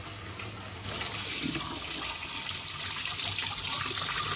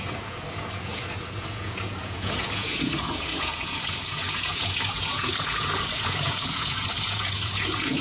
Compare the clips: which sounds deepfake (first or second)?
second